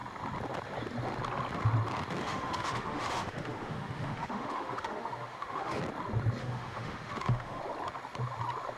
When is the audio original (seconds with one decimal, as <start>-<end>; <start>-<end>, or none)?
0.0-2.2; 5.8-6.4; 7.6-8.8